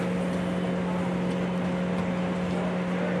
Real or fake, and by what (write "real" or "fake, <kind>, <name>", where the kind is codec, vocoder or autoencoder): real